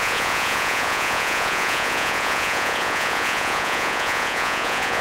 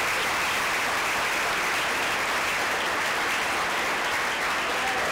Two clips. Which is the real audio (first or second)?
second